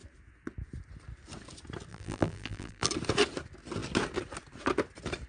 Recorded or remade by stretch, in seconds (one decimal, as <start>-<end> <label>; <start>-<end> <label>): 0.0-1.9 recorded; 1.9-2.9 remade; 2.9-5.3 recorded